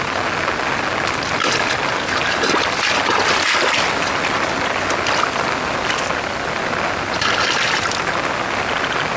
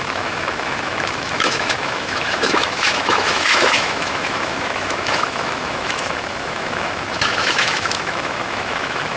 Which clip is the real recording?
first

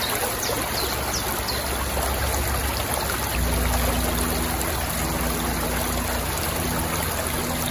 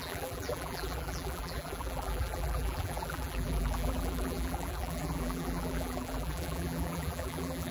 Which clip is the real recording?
first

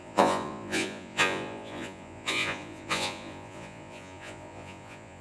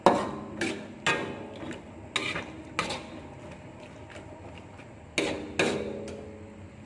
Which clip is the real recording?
second